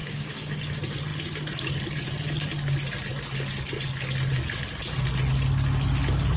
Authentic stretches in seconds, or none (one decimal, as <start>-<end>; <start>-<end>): 0.7-6.4